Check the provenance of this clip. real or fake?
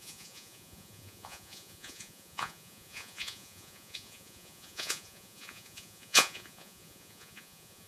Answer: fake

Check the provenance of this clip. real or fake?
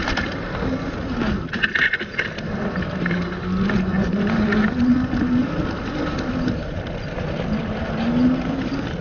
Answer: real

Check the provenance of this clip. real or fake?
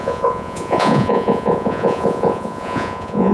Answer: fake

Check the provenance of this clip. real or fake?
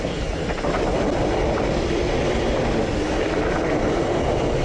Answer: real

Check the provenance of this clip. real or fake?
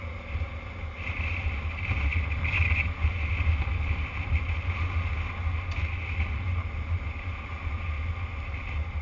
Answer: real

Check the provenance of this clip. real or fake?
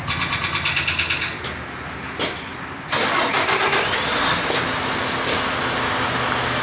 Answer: real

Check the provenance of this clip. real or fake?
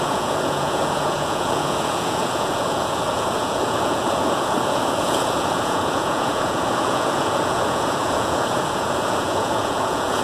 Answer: fake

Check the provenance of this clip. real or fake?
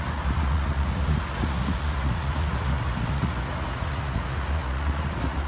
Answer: fake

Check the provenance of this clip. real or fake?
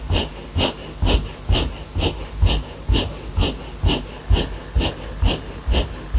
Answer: real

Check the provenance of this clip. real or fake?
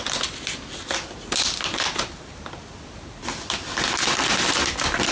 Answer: real